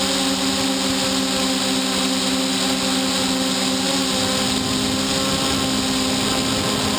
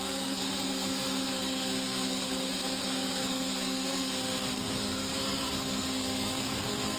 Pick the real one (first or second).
first